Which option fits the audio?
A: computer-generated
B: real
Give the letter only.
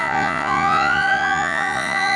A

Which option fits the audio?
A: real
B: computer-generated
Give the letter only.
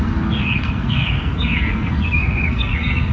B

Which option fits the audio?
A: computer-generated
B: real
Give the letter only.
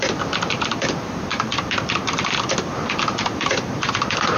A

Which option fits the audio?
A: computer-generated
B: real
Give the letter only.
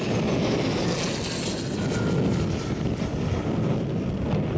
B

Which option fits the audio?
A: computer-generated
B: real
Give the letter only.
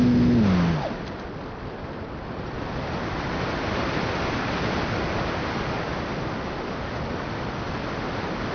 B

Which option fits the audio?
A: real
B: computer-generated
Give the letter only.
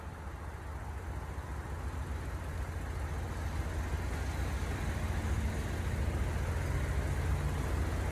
A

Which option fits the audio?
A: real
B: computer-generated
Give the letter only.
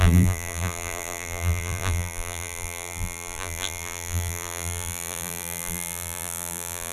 B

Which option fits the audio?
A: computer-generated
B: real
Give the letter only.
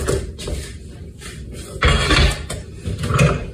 B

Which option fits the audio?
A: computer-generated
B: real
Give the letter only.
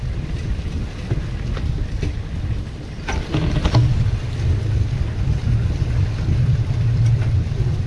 B